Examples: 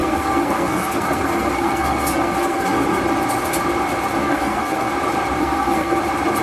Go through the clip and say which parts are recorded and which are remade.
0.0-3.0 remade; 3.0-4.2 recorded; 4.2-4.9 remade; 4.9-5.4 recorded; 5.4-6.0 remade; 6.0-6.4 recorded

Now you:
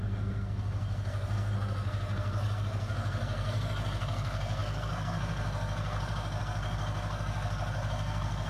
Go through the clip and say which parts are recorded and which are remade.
0.0-8.5 remade

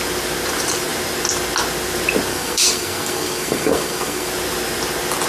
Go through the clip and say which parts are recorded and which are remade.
0.0-2.3 recorded; 2.3-4.3 remade; 4.3-5.3 recorded

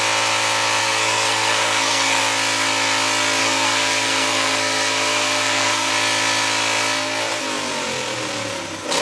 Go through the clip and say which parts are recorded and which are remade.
0.0-0.8 recorded; 0.8-2.2 remade; 2.2-3.4 recorded; 3.4-5.9 remade; 5.9-9.0 recorded

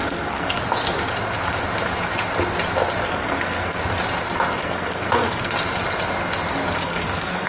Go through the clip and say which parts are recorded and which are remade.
0.0-0.6 remade; 0.6-3.0 recorded; 3.0-3.8 remade; 3.8-4.6 recorded; 4.6-5.5 remade; 5.5-6.8 recorded; 6.8-7.5 remade

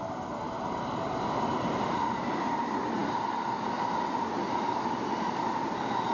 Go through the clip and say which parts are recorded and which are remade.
0.0-6.1 recorded

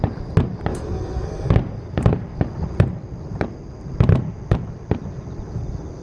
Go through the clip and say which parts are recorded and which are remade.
0.0-0.7 recorded; 0.7-1.5 remade; 1.5-6.0 recorded

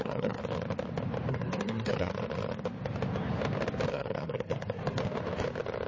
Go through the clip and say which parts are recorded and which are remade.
0.0-0.4 remade; 0.4-1.3 recorded; 1.3-2.1 remade; 2.1-3.9 recorded; 3.9-5.0 remade; 5.0-5.9 recorded